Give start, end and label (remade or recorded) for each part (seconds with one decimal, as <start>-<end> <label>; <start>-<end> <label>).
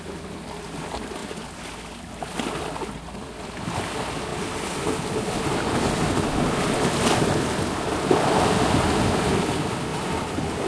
0.0-9.9 recorded; 9.9-10.7 remade